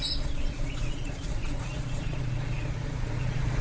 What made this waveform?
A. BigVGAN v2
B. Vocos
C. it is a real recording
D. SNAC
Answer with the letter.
B